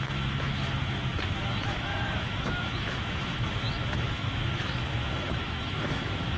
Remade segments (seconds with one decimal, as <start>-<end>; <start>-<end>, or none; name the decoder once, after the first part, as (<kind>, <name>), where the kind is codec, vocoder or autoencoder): 0.0-6.4 (autoencoder, DAC-VAE)